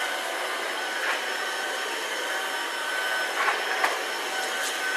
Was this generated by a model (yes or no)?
no